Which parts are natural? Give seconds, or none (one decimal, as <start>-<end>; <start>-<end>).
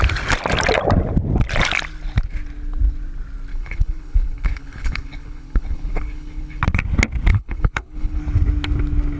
0.0-3.5; 6.6-7.3; 8.2-9.2